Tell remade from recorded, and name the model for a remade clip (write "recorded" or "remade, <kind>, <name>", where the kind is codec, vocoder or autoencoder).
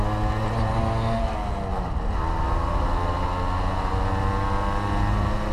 recorded